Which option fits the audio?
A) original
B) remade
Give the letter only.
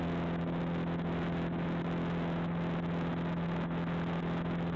A